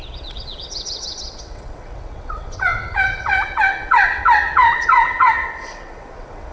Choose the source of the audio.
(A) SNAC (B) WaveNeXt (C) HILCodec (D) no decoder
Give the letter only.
B